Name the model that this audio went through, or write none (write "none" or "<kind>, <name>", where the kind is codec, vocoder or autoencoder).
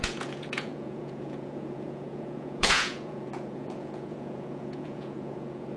vocoder, Vocos